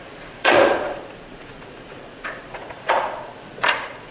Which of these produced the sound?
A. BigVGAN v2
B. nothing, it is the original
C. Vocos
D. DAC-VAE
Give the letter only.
C